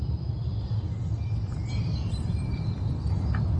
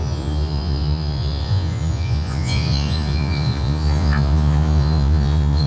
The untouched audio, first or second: first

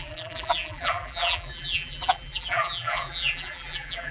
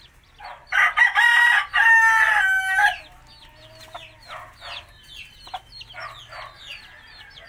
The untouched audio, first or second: second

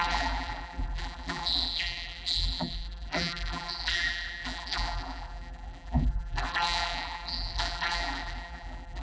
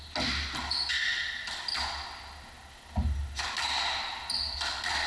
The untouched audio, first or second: second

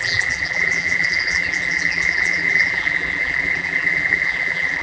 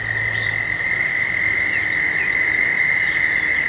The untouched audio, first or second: second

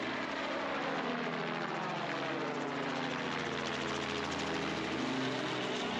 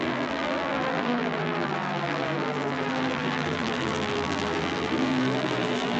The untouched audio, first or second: first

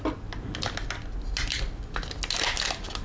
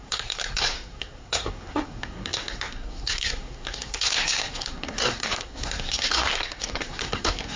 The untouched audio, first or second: first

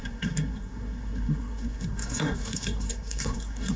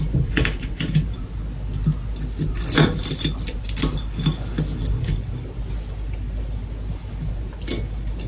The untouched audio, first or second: second